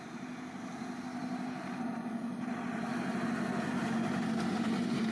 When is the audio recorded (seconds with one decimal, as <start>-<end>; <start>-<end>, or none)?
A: 0.0-5.1